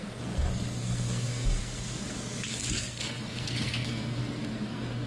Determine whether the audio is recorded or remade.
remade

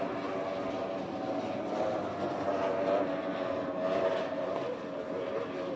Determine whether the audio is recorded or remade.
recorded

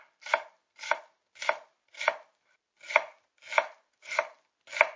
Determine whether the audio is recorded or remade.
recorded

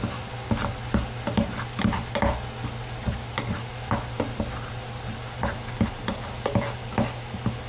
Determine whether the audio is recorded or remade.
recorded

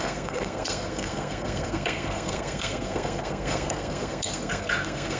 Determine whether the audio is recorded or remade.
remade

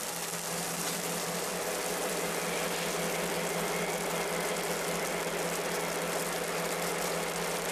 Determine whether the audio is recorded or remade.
recorded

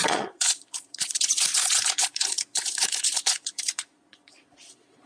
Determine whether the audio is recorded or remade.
remade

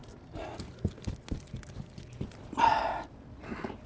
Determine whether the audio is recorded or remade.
recorded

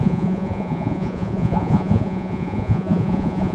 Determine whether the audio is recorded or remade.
remade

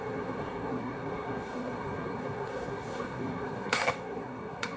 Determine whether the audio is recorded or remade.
remade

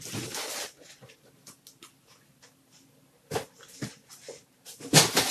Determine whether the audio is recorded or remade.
recorded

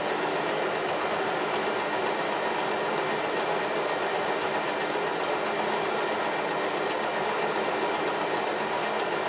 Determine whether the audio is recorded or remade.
recorded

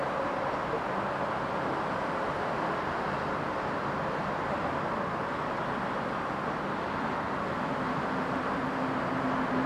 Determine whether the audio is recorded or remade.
recorded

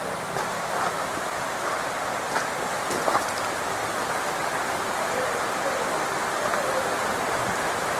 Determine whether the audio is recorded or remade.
recorded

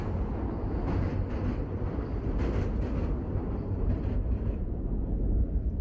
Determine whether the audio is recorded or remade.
recorded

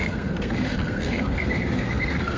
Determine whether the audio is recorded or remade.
remade